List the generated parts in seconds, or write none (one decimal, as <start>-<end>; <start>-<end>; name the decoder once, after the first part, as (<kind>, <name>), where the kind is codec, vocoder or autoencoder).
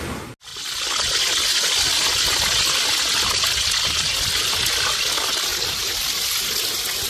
5.5-6.1 (vocoder, BigVGAN v2)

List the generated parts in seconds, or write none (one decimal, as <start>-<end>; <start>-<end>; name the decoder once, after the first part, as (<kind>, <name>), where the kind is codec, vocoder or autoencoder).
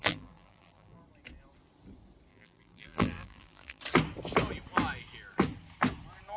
0.0-1.0 (vocoder, BigVGAN v2); 2.3-3.8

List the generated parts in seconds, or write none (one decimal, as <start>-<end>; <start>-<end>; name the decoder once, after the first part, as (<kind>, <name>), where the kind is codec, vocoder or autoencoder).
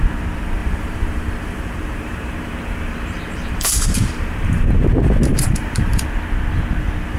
0.6-4.7 (vocoder, BigVGAN v2); 5.3-6.0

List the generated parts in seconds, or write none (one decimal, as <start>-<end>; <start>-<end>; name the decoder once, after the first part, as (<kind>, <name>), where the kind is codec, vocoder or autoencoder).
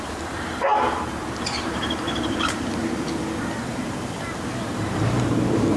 0.0-0.7 (vocoder, BigVGAN v2); 1.4-2.8; 4.8-5.8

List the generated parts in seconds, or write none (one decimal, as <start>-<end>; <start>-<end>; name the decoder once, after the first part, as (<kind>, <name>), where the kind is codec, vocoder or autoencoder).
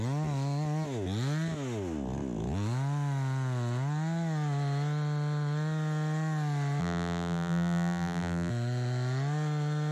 6.8-8.5 (vocoder, BigVGAN v2)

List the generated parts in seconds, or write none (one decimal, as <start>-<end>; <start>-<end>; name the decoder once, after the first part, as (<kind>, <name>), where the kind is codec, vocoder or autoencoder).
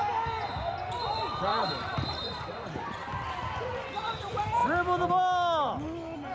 1.5-3.1 (vocoder, BigVGAN v2)